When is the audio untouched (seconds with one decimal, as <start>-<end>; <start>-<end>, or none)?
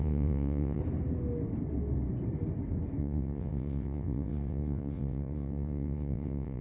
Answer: 0.8-3.0